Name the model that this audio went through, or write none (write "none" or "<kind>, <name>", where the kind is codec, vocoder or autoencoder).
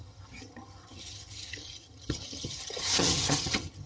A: vocoder, HiFi-GAN